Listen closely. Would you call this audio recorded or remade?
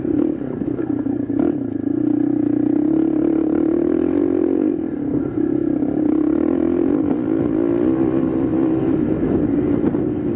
recorded